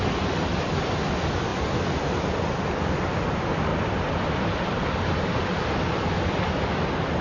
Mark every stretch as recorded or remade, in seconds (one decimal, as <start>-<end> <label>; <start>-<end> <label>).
0.0-7.2 recorded